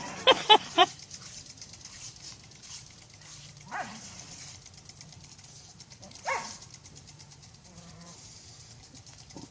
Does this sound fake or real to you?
fake